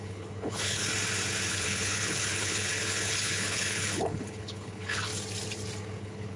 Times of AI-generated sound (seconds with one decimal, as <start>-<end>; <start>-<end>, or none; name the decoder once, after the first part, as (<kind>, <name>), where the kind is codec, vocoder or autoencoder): 0.0-0.8 (codec, HILCodec); 1.5-5.1; 6.0-6.4